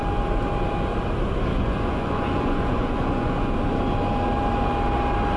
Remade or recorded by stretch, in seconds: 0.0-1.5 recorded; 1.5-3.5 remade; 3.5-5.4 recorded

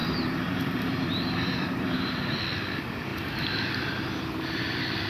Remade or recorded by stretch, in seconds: 0.0-2.4 remade; 2.4-3.1 recorded; 3.1-4.1 remade; 4.1-5.1 recorded

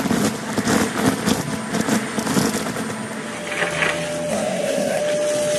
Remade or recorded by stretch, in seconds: 0.0-4.3 recorded; 4.3-5.0 remade; 5.0-5.6 recorded

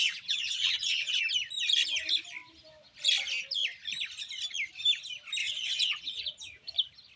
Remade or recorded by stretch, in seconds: 0.0-1.2 remade; 1.2-5.4 recorded; 5.4-6.2 remade; 6.2-7.2 recorded

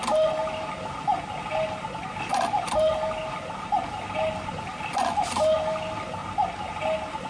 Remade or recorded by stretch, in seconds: 0.0-7.3 recorded

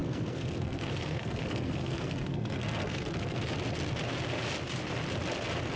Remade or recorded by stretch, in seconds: 0.0-3.5 remade; 3.5-5.8 recorded

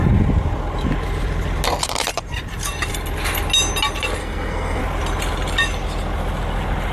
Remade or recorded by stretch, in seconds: 0.0-4.2 recorded; 4.2-4.8 remade; 4.8-6.9 recorded

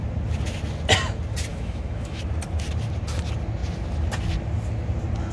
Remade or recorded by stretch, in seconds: 0.0-1.5 recorded; 1.5-2.2 remade; 2.2-5.3 recorded